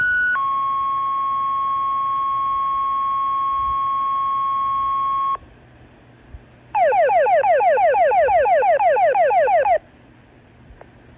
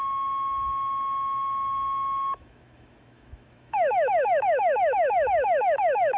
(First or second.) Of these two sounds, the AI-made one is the second